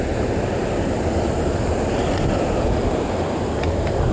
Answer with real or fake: real